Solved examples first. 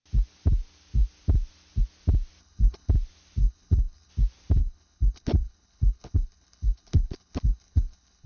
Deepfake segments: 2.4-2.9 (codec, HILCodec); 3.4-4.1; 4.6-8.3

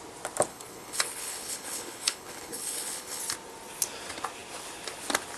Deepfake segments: 0.5-3.2 (codec, HILCodec)

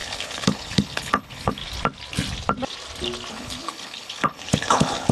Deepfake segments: 0.0-1.6 (codec, HILCodec); 3.3-5.1

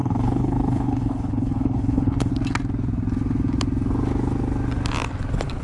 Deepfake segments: 0.0-2.3 (codec, HILCodec)

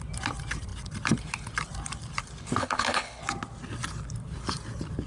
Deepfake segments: 2.6-3.2 (codec, HILCodec)

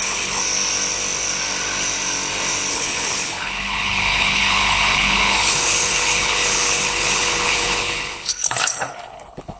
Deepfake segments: 0.0-0.4 (codec, HILCodec); 2.7-9.6

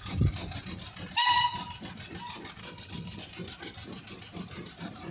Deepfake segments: 2.6-3.2 (codec, HILCodec)